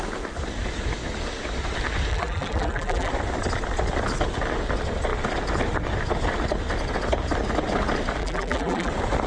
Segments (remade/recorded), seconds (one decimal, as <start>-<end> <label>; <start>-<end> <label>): 0.0-2.1 recorded; 2.1-3.1 remade; 3.1-8.2 recorded; 8.2-8.9 remade; 8.9-9.3 recorded